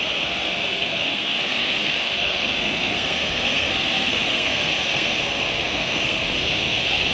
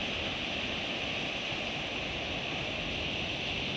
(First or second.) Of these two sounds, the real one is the second